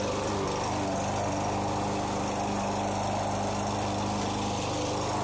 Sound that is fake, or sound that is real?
real